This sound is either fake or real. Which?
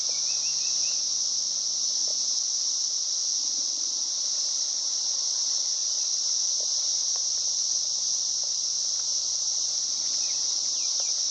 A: real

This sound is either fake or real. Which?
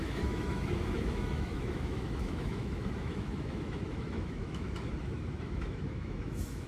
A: fake